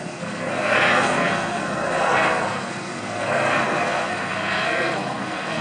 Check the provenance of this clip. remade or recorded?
remade